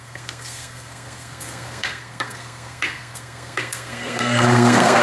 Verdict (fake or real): fake